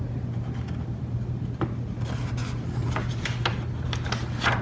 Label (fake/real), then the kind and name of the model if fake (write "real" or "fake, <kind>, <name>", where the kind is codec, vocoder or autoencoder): real